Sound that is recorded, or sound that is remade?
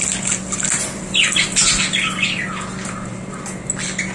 recorded